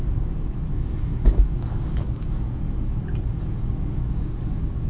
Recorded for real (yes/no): no